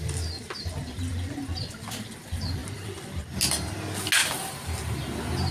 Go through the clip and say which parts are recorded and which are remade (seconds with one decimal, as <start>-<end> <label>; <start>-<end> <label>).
0.0-5.5 recorded